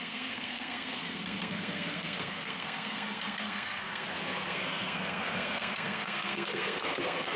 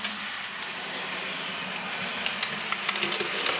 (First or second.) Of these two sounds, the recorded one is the second